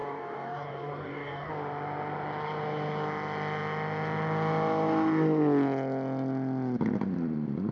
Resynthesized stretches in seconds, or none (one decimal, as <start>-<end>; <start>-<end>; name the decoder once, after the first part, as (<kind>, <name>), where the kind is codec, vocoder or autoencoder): 0.0-1.5 (codec, DAC)